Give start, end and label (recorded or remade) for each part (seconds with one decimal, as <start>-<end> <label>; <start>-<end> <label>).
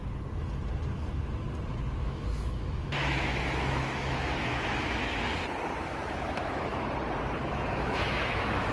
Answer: 0.0-2.0 recorded; 2.0-5.3 remade; 5.3-5.8 recorded; 5.8-6.7 remade; 6.7-7.4 recorded; 7.4-8.7 remade